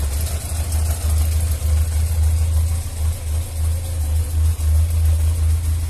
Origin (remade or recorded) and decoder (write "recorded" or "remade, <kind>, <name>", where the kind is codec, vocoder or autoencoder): recorded